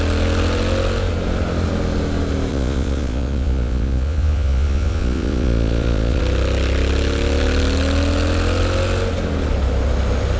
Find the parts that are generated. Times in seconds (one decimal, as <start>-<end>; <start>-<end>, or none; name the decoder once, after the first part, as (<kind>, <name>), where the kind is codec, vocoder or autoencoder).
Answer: 2.5-6.2 (vocoder, Vocos)